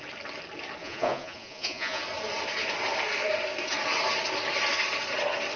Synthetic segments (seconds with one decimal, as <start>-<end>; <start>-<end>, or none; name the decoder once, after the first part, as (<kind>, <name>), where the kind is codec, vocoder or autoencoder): 0.8-2.0 (vocoder, Vocos)